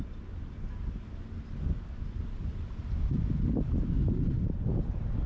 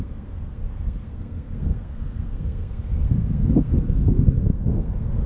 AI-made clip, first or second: second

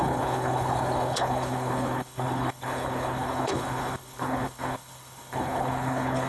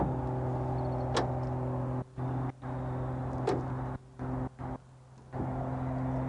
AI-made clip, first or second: first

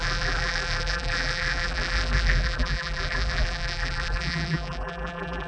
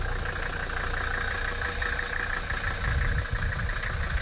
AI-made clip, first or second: first